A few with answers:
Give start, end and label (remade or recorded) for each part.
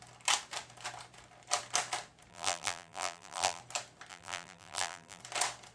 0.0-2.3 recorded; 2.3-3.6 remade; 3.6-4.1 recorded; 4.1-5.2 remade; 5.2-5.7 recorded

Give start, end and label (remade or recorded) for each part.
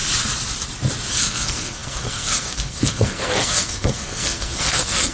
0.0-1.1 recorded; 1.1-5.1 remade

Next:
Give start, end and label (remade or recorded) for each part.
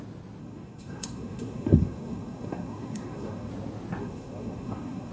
0.0-0.4 recorded; 0.4-3.5 remade; 3.5-4.0 recorded; 4.0-5.1 remade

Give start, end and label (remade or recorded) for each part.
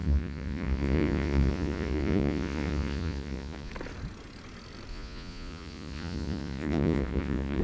0.0-3.7 remade; 3.7-4.9 recorded; 4.9-7.6 remade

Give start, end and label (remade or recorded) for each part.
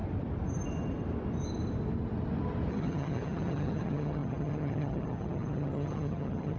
0.0-2.7 recorded; 2.7-6.6 remade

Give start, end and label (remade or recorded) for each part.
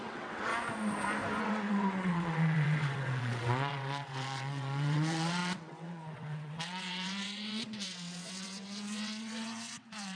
0.0-0.5 remade; 0.5-1.4 recorded; 1.4-10.2 remade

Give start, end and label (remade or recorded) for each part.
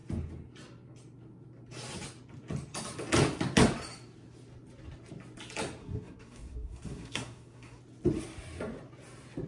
0.0-5.8 recorded; 5.8-7.8 remade; 7.8-9.5 recorded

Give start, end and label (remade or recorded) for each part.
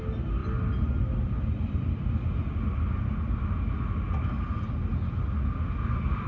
0.0-0.4 recorded; 0.4-0.9 remade; 0.9-6.3 recorded